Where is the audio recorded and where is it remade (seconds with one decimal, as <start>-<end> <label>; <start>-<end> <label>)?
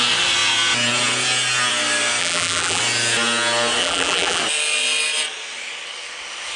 0.0-2.2 recorded; 2.2-2.8 remade; 2.8-3.8 recorded; 3.8-4.4 remade; 4.4-6.6 recorded